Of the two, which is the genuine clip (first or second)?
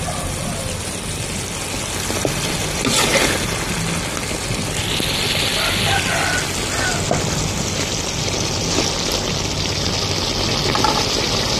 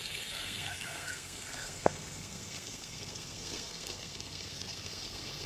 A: first